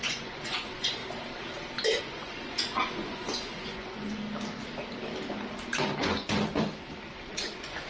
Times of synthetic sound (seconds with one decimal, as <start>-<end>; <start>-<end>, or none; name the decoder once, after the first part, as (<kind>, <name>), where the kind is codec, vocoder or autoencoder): 0.0-1.0 (vocoder, Vocos); 2.0-4.2; 6.0-6.7; 7.3-7.9